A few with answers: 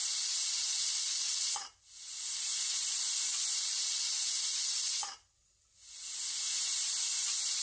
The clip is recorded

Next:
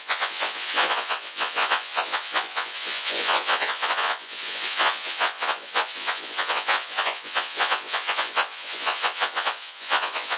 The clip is remade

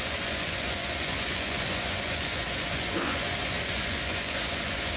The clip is remade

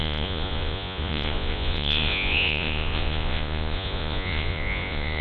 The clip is remade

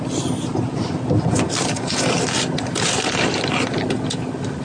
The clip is recorded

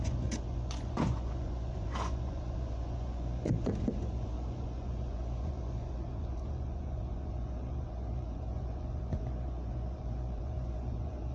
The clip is remade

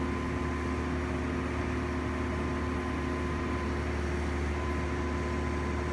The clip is recorded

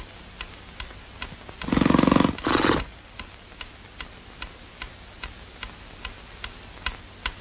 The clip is recorded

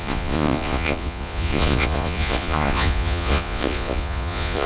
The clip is remade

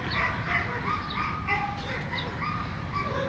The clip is recorded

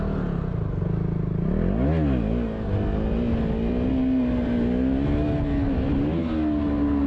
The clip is recorded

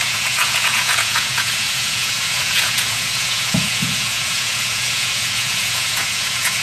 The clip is remade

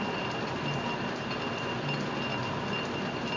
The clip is recorded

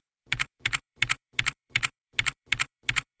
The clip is remade